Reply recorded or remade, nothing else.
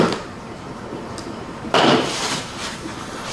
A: remade